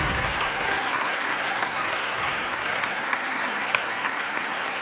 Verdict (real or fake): fake